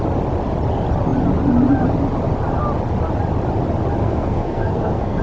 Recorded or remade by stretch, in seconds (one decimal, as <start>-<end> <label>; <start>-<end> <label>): 0.0-4.0 recorded; 4.0-5.2 remade